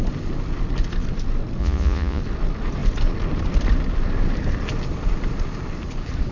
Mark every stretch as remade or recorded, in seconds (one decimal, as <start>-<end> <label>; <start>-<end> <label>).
0.0-1.6 recorded; 1.6-2.2 remade; 2.2-6.3 recorded